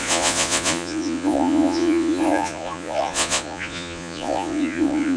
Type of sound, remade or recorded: remade